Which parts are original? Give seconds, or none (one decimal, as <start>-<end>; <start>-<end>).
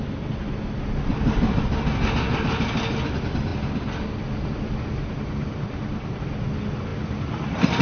0.0-7.8